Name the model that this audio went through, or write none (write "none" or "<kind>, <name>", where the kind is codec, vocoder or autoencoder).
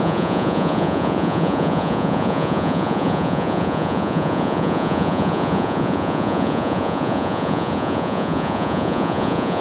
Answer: vocoder, Vocos